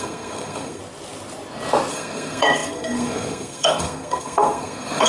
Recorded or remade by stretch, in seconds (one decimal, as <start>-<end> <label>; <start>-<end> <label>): 0.0-0.8 remade; 0.8-1.9 recorded; 1.9-5.1 remade

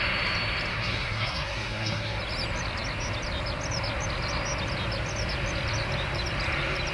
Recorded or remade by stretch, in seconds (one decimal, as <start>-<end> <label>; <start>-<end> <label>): 0.0-0.7 recorded; 0.7-2.2 remade; 2.2-6.9 recorded